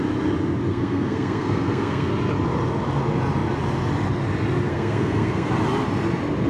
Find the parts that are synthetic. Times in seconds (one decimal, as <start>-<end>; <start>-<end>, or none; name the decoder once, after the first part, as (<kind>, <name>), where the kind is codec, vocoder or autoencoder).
0.7-2.1 (codec, SNAC); 4.7-5.5

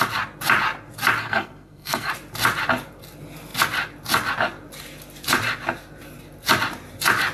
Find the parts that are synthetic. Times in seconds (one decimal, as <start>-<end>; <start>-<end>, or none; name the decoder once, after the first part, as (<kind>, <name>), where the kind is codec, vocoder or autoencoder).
1.2-2.1 (codec, SNAC)